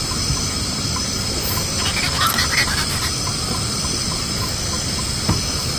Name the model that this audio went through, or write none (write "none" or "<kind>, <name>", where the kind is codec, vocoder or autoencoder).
none